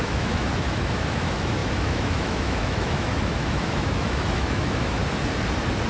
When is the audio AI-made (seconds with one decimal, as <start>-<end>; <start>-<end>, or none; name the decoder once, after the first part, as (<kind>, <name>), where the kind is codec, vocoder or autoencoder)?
0.0-5.0 (autoencoder, DAC-VAE)